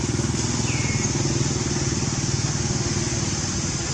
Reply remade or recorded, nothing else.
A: recorded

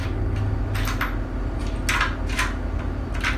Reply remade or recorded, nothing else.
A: recorded